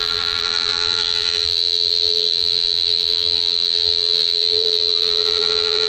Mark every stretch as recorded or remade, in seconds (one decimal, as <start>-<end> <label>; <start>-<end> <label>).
0.0-5.9 remade